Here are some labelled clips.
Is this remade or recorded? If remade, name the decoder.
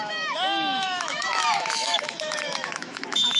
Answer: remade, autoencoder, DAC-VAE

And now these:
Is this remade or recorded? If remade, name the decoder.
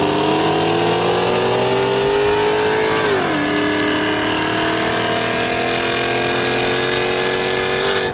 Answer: recorded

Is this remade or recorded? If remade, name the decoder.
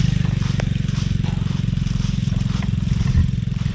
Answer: recorded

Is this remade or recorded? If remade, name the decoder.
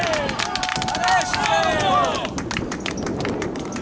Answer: recorded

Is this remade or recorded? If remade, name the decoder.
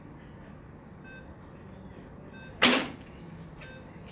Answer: recorded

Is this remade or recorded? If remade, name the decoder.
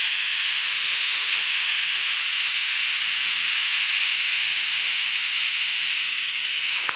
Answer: remade, autoencoder, DAC-VAE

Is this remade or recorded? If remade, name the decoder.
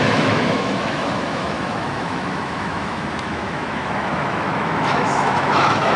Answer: remade, autoencoder, DAC-VAE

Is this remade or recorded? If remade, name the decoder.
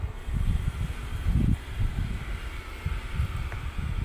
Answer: recorded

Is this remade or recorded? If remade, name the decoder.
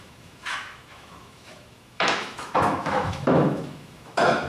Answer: remade, autoencoder, DAC-VAE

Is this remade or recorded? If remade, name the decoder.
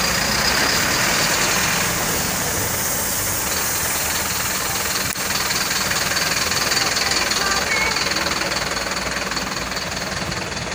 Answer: recorded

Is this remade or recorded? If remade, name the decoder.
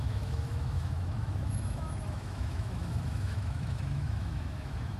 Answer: remade, autoencoder, DAC-VAE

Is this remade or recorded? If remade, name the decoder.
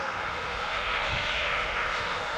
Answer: remade, autoencoder, DAC-VAE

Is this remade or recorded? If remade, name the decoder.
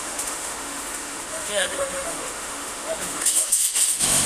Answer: remade, autoencoder, DAC-VAE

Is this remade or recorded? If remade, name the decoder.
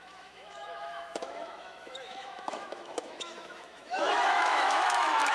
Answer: remade, autoencoder, DAC-VAE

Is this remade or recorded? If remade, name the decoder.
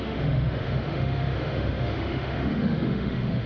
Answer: remade, autoencoder, DAC-VAE